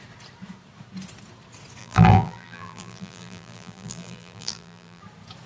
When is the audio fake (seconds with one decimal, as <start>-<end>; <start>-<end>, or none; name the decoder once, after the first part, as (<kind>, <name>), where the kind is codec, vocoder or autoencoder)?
1.8-5.0 (vocoder, BigVGAN v2)